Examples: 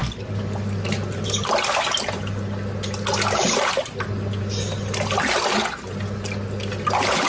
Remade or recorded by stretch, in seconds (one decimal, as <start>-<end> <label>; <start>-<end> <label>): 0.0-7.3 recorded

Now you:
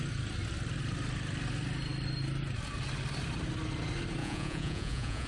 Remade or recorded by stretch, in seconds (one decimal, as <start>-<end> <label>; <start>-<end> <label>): 0.0-4.2 recorded; 4.2-5.3 remade

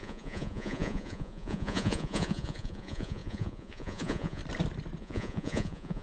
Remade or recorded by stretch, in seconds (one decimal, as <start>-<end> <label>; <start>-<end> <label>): 0.0-4.4 remade; 4.4-5.0 recorded; 5.0-6.0 remade

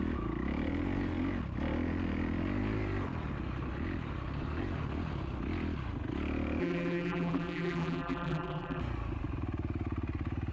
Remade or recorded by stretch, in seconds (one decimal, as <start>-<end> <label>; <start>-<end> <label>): 0.0-6.6 recorded; 6.6-8.8 remade; 8.8-10.5 recorded